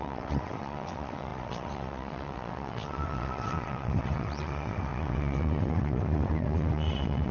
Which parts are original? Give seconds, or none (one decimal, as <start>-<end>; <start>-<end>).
none

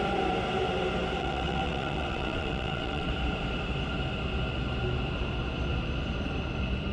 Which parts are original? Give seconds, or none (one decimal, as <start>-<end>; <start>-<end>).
0.0-1.2; 3.1-6.9

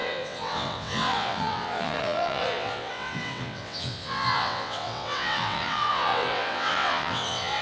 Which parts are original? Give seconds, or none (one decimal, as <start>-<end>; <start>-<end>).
none

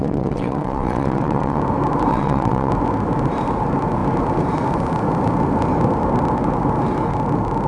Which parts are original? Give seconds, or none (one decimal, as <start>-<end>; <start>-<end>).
1.6-2.1; 2.7-7.7

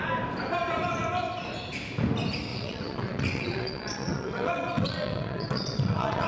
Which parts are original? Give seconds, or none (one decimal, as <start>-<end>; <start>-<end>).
0.0-2.5

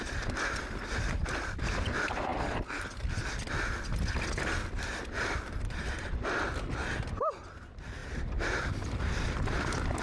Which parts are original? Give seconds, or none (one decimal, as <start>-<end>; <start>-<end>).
0.0-10.0

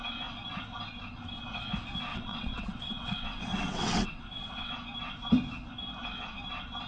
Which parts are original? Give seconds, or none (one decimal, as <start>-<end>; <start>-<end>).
0.0-2.1; 4.7-6.9

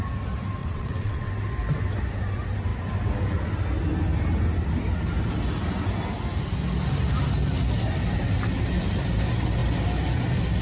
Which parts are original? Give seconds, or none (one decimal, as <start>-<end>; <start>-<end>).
0.0-0.6; 1.3-10.6